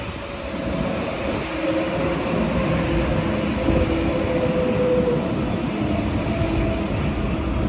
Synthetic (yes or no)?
no